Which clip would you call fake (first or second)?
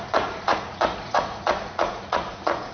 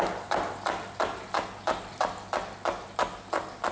first